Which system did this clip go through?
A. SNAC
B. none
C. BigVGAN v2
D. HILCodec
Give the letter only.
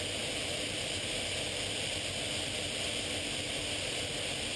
B